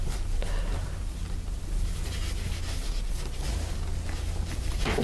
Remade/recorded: recorded